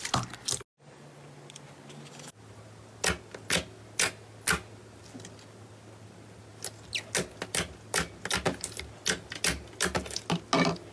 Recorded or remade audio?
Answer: recorded